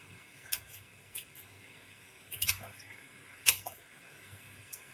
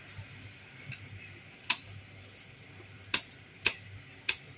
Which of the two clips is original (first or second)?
second